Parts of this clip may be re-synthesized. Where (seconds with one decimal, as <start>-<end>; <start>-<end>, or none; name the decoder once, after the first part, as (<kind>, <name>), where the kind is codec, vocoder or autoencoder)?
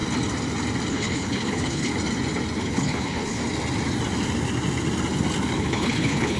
0.9-1.9 (codec, HILCodec); 2.6-3.4; 5.6-6.4